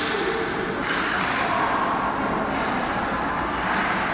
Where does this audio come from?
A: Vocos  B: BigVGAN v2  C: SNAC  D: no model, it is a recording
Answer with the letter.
D